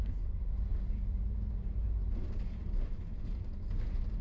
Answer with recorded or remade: remade